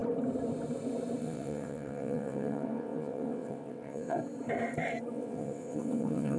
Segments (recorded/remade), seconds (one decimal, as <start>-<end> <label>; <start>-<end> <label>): 0.0-1.2 recorded; 1.2-4.2 remade; 4.2-5.1 recorded; 5.1-6.4 remade